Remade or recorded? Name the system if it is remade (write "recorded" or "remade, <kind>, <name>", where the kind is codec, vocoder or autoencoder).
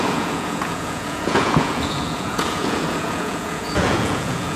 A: remade, vocoder, Vocos